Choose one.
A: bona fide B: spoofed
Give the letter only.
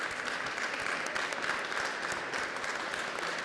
A